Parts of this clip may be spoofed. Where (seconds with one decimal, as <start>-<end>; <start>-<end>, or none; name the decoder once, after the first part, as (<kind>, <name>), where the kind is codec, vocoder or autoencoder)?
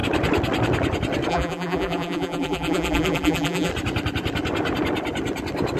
1.3-3.7 (vocoder, BigVGAN v2)